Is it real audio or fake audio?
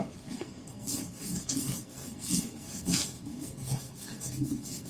fake